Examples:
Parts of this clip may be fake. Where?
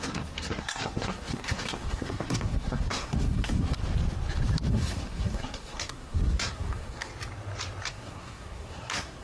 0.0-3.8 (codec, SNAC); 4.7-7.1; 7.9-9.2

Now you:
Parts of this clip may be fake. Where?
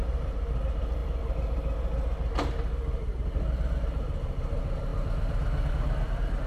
0.0-0.5 (vocoder, BigVGAN v2)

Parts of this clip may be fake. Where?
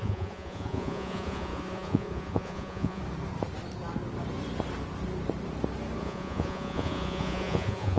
0.0-3.0 (vocoder, Vocos); 6.0-8.0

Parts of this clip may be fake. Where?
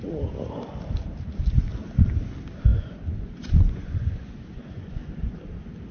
2.7-5.4 (vocoder, Vocos)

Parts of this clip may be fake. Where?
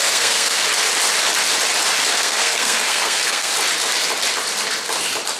0.0-0.6 (codec, SNAC); 2.1-3.5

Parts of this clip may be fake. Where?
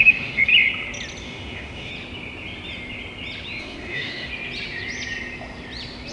0.0-0.5 (autoencoder, DAC-VAE); 1.2-1.9; 3.6-4.3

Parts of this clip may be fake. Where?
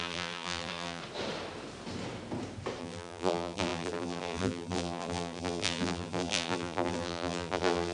0.0-1.0 (vocoder, BigVGAN v2); 2.8-7.9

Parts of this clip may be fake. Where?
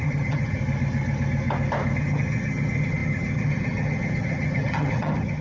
0.0-0.6 (vocoder, HiFi-GAN); 2.0-5.4